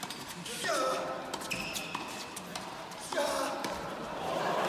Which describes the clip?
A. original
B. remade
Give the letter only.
A